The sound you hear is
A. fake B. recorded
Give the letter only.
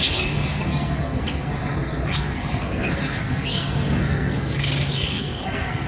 A